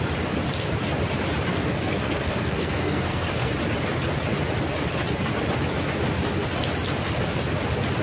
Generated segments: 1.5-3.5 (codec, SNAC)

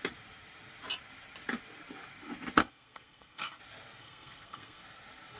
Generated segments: 2.6-3.6 (codec, SNAC); 4.0-4.8